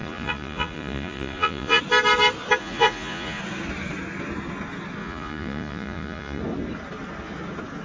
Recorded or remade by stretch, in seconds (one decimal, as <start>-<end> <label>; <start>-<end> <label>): 0.0-1.8 remade; 1.8-2.6 recorded; 2.6-3.4 remade; 3.4-5.0 recorded; 5.0-6.4 remade; 6.4-7.8 recorded